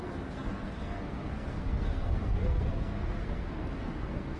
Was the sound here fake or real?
fake